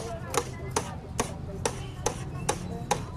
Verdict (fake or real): real